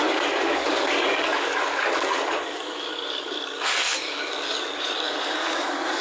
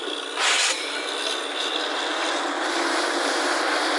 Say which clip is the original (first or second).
second